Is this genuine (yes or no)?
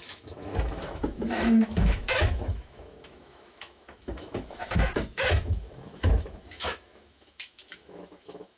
no